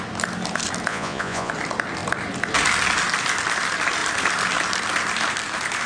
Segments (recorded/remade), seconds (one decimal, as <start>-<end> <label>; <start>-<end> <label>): 0.0-0.9 recorded; 0.9-1.5 remade; 1.5-5.9 recorded